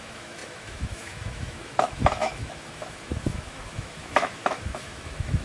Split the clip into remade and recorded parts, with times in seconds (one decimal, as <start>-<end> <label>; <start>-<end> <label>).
0.0-5.4 remade